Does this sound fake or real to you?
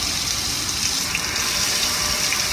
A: real